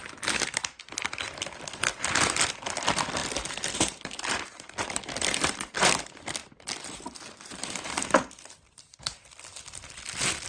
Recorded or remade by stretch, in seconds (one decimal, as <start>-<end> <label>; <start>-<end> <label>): 0.0-10.5 recorded